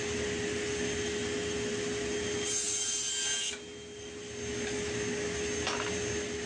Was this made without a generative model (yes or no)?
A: yes